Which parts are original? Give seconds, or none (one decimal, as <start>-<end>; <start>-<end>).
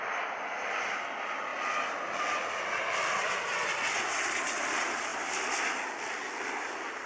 0.0-7.1